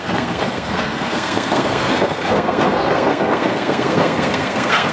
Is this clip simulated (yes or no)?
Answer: yes